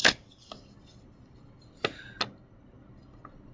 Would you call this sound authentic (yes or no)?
yes